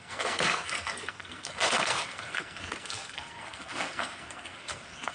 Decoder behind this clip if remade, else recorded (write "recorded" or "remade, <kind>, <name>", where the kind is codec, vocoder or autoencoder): remade, codec, SNAC